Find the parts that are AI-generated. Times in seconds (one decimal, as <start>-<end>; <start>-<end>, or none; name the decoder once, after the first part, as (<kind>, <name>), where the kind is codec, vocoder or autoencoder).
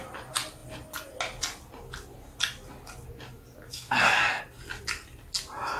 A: 3.7-4.4 (codec, DAC)